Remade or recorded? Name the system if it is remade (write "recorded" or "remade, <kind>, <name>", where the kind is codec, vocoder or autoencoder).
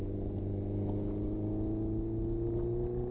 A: recorded